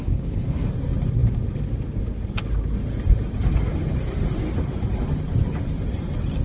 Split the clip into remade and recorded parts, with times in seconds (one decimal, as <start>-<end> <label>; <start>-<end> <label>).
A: 0.0-0.7 remade; 0.7-6.4 recorded